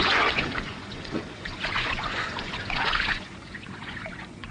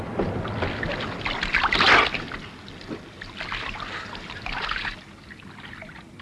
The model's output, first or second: first